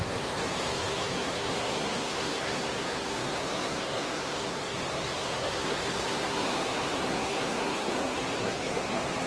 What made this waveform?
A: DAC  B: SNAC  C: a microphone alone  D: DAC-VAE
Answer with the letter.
B